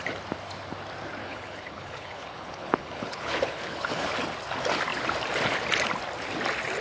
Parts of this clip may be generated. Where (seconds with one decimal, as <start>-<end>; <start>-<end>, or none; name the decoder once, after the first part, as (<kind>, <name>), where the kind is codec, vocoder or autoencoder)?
1.2-4.1 (codec, HILCodec)